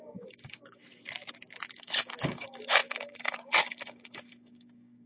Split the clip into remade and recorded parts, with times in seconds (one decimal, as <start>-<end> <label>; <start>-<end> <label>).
0.0-0.8 remade; 0.8-1.7 recorded; 1.7-5.1 remade